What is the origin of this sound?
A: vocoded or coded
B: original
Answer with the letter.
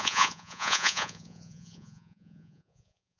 A